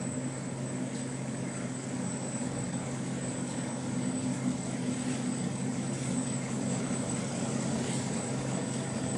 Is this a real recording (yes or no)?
no